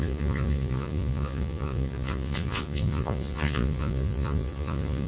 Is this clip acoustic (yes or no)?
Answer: no